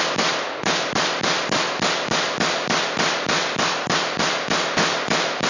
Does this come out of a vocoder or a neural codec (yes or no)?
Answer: no